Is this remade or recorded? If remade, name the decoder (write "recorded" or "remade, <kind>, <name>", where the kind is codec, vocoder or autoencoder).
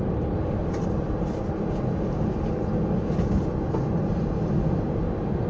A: recorded